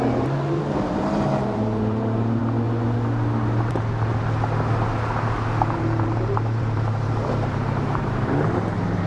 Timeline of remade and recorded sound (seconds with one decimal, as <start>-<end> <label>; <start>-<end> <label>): 0.0-2.4 remade; 2.4-5.7 recorded; 5.7-9.1 remade